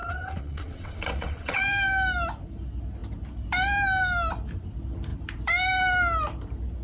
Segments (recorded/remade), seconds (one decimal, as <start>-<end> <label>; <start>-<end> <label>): 0.0-1.6 remade; 1.6-6.8 recorded